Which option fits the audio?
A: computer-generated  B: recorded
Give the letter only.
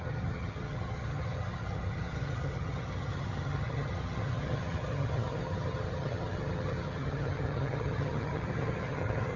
A